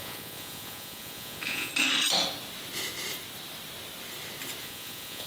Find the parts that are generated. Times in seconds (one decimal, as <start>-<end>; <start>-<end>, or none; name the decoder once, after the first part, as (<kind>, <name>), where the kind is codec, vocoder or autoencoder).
0.0-1.7 (vocoder, Vocos); 4.6-5.3